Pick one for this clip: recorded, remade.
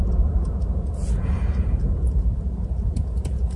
remade